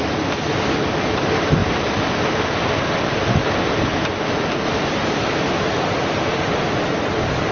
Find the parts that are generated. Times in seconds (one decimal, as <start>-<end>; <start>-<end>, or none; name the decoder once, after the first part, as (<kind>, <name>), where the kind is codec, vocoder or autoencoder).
3.9-4.4 (vocoder, BigVGAN v2)